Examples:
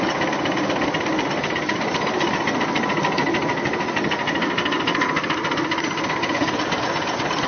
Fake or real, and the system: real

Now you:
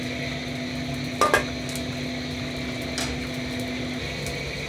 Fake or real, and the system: real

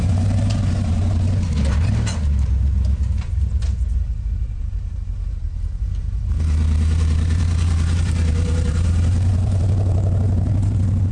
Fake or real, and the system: fake, vocoder, BigVGAN v2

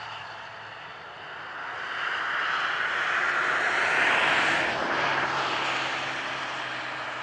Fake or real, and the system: real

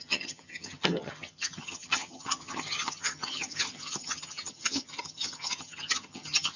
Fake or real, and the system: fake, vocoder, HiFi-GAN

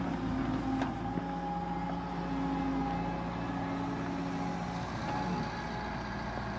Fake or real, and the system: real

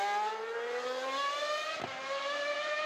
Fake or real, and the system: real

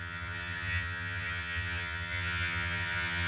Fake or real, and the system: fake, vocoder, HiFi-GAN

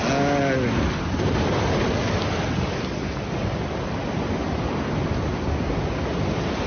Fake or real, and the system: real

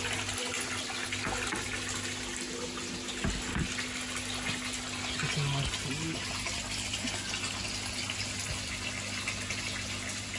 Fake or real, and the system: real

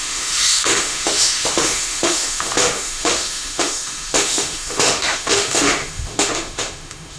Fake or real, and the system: fake, autoencoder, DAC-VAE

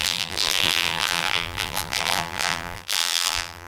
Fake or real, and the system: fake, vocoder, BigVGAN v2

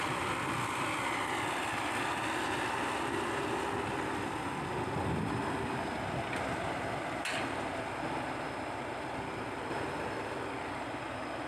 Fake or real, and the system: real